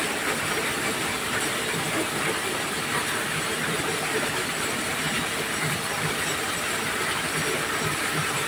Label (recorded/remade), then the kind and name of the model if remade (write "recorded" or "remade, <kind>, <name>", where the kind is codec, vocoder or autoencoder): remade, vocoder, BigVGAN v2